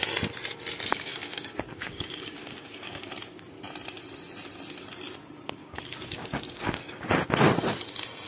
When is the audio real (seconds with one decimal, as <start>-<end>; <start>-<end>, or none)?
0.0-0.9; 3.1-5.6; 7.0-8.3

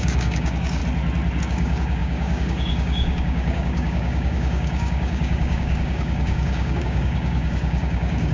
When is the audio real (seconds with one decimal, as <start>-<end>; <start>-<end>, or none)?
0.8-1.4

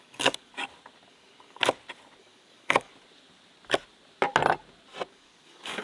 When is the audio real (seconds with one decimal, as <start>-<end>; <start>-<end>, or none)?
0.5-1.1; 1.6-2.2; 2.9-5.1